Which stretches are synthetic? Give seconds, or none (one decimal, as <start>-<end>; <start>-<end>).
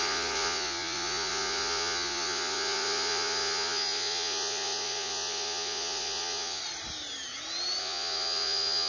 0.0-6.6; 7.8-8.9